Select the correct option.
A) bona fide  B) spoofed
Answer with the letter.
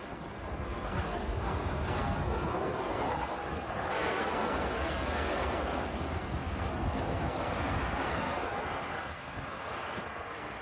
B